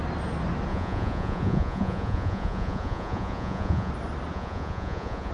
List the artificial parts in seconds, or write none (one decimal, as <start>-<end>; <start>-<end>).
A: 0.7-3.9; 4.3-5.3